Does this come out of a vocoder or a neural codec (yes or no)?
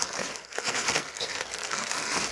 yes